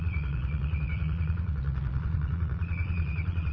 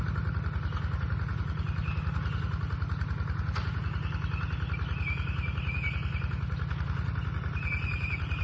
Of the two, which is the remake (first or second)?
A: first